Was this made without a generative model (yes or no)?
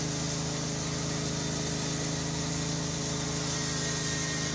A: yes